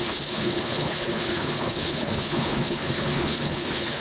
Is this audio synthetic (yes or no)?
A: yes